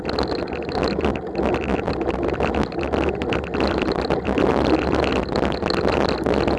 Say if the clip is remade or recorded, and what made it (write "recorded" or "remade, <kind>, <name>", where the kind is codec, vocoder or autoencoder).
recorded